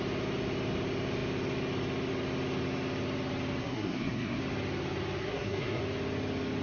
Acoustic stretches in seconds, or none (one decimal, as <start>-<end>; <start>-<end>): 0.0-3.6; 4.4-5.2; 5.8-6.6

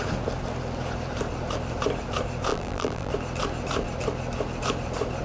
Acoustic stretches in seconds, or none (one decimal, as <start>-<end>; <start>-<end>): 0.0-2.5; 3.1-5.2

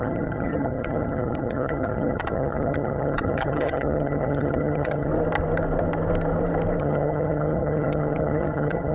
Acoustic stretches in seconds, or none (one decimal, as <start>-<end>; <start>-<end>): 5.1-6.8

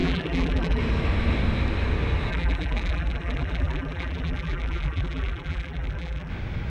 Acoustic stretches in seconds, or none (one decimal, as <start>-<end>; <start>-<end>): 0.8-2.3; 6.3-6.7